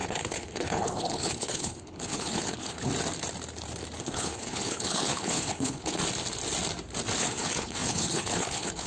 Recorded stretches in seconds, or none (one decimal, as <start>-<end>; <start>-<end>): 2.9-4.0; 6.0-7.2